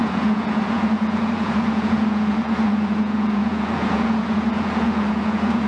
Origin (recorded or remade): remade